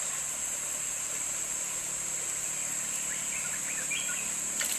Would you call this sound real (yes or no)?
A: yes